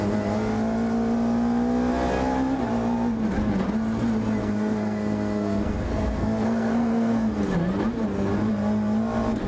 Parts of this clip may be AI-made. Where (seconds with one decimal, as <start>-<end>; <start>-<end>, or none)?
4.4-7.4